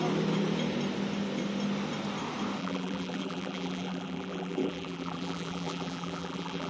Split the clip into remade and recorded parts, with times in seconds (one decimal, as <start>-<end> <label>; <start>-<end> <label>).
0.0-2.6 recorded; 2.6-6.7 remade